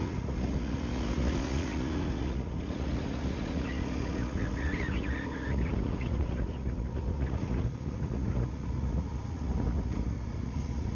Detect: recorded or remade remade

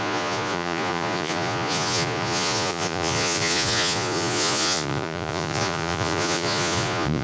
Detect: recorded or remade remade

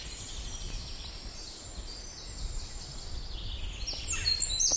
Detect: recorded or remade recorded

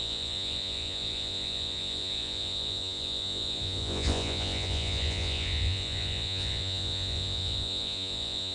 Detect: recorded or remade remade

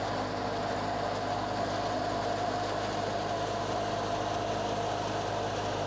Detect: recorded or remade recorded